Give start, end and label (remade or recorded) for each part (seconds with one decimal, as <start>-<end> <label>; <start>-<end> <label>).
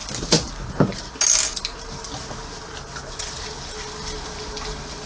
0.0-5.1 recorded